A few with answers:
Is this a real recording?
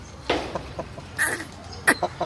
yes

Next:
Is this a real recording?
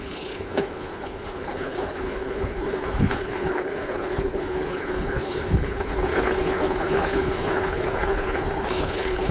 no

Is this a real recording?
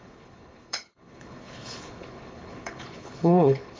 no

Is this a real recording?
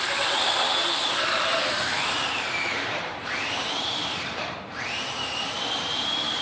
no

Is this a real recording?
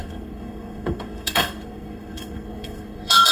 no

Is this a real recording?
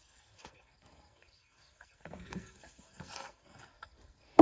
no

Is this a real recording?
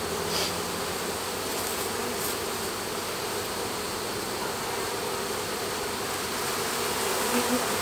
yes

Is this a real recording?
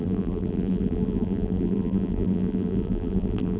no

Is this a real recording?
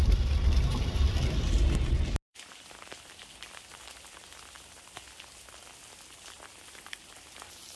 yes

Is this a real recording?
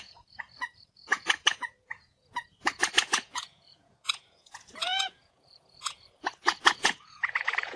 no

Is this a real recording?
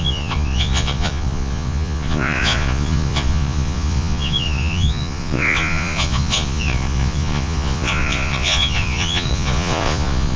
no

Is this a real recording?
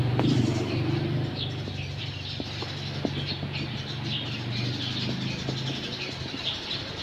yes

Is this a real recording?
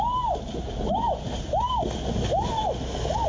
yes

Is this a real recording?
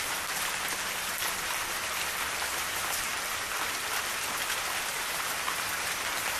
no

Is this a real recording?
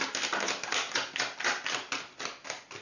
yes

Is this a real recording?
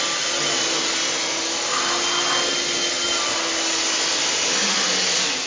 yes